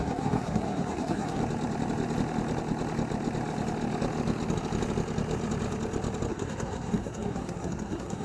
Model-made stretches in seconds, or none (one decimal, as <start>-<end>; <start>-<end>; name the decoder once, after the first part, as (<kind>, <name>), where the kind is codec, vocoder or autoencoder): 0.0-1.4 (codec, SNAC); 6.3-8.2

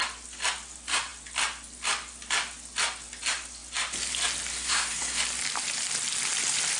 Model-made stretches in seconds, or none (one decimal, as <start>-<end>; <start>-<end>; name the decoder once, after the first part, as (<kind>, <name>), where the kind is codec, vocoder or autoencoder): 4.5-5.2 (codec, SNAC)

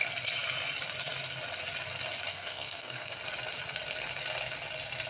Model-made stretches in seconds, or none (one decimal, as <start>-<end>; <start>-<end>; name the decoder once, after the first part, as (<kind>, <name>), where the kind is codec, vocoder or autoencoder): 2.3-3.2 (codec, SNAC)

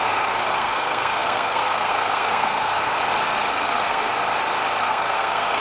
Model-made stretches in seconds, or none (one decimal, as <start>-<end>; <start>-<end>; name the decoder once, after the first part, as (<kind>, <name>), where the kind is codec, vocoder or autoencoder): 0.0-2.9 (codec, SNAC); 3.5-4.1; 4.8-5.6

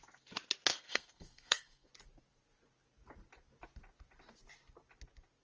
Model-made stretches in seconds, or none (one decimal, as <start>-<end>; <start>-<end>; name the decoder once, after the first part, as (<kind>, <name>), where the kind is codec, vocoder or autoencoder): 0.7-1.9 (codec, SNAC)

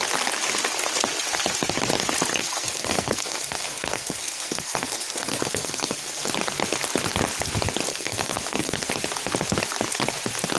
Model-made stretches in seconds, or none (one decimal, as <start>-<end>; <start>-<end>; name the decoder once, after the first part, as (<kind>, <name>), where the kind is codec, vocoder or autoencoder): 2.3-6.3 (codec, SNAC); 7.9-8.9

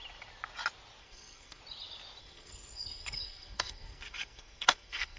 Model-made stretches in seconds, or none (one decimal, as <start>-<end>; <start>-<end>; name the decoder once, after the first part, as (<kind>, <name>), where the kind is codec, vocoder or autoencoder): 1.0-1.6 (codec, SNAC); 2.2-5.2